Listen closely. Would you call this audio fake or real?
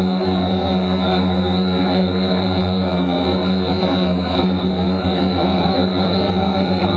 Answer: fake